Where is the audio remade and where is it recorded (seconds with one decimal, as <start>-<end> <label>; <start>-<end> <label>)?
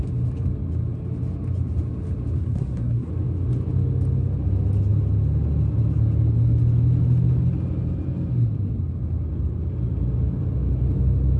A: 0.0-2.4 recorded; 2.4-3.1 remade; 3.1-11.4 recorded